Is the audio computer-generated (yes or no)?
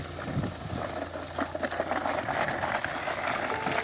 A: no